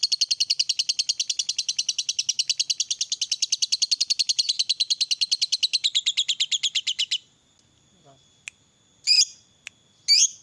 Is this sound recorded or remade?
recorded